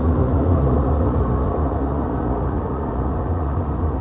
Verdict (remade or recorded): remade